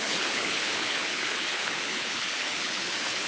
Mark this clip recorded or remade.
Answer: remade